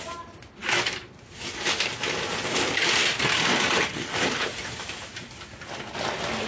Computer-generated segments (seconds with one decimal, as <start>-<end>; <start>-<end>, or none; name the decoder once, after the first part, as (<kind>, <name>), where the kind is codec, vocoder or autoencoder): none